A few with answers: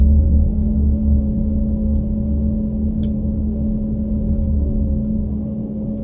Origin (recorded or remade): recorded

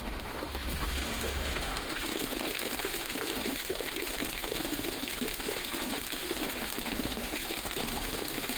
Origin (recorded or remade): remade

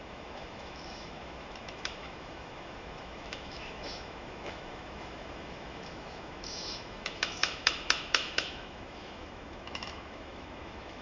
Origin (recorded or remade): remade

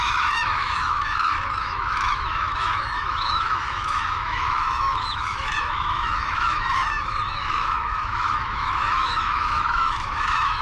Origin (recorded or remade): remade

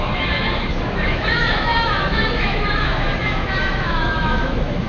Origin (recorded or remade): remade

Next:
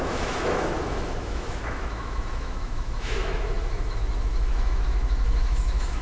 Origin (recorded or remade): remade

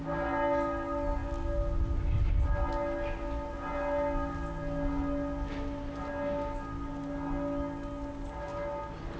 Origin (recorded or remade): recorded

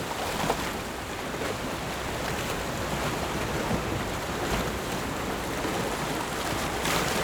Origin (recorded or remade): recorded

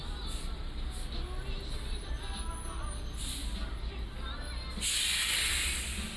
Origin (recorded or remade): recorded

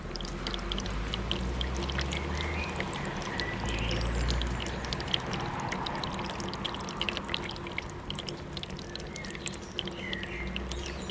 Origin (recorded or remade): recorded